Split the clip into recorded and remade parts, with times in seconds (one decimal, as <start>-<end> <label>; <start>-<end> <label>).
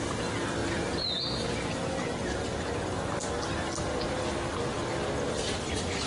0.0-0.6 recorded; 0.6-1.2 remade; 1.2-6.1 recorded